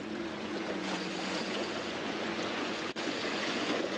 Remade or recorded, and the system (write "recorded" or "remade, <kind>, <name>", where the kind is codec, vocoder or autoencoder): remade, vocoder, Vocos